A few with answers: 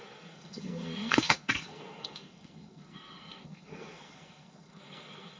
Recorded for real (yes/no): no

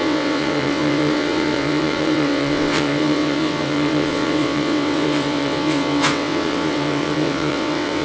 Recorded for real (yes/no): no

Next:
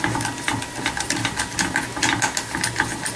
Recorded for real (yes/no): yes